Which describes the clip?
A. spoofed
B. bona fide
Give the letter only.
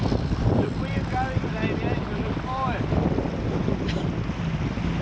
B